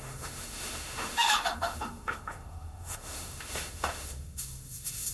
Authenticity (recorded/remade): remade